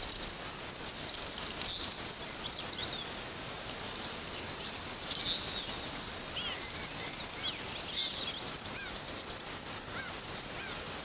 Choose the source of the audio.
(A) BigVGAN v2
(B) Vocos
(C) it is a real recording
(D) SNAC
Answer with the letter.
C